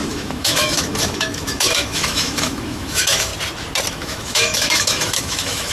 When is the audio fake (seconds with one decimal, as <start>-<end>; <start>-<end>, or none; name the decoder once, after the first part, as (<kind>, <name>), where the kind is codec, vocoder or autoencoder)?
0.0-3.3 (autoencoder, DAC-VAE); 3.9-5.7